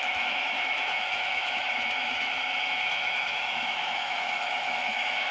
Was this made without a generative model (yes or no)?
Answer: no